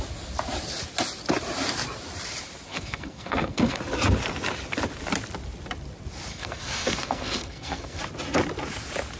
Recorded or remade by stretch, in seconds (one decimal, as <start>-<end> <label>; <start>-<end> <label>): 0.0-2.7 recorded; 2.7-3.8 remade; 3.8-6.3 recorded; 6.3-8.0 remade; 8.0-9.2 recorded